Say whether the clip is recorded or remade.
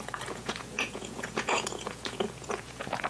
remade